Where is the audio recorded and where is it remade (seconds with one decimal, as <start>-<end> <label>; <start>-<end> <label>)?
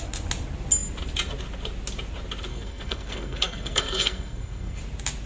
0.0-2.5 recorded; 2.5-4.8 remade; 4.8-5.3 recorded